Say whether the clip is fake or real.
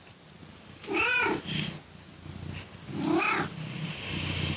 real